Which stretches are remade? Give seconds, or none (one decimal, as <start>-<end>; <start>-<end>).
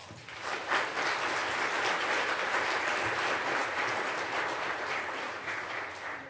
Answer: 0.0-0.7; 3.6-6.3